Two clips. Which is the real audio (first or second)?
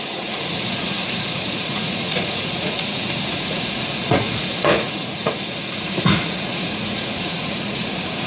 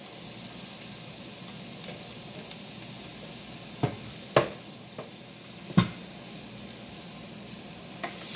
second